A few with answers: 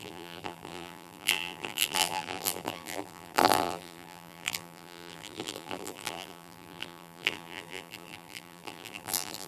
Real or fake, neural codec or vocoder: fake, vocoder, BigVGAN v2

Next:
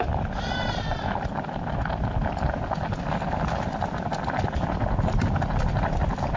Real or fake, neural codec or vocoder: real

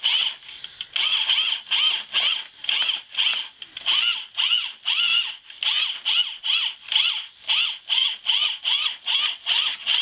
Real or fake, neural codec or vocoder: real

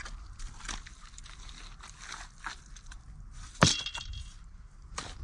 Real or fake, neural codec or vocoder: real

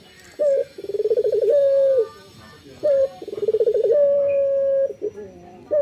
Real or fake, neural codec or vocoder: real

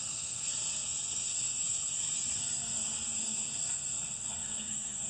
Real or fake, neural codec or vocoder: fake, codec, SNAC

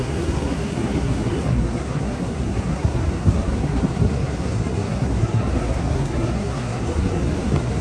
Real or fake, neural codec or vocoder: fake, codec, SNAC